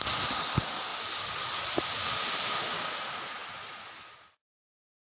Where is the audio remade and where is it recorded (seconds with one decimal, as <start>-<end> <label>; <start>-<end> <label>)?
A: 0.0-5.0 recorded